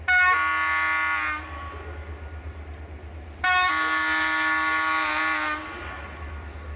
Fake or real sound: real